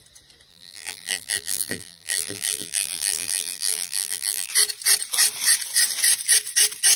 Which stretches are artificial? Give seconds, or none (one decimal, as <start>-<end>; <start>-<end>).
0.5-4.5